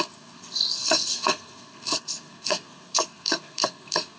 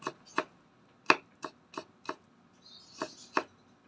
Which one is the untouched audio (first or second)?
second